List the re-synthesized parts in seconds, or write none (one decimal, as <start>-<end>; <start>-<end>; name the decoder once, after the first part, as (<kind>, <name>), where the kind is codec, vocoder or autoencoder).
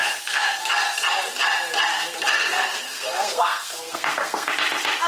0.0-0.7 (codec, SNAC); 1.9-4.5